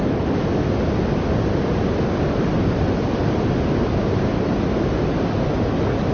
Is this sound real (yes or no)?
yes